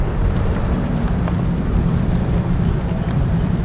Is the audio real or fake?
fake